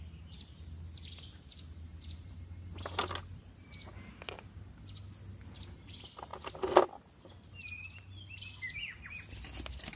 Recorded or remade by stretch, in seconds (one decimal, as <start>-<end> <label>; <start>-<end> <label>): 0.0-10.0 recorded